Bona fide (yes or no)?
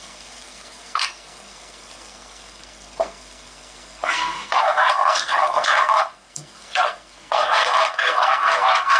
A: no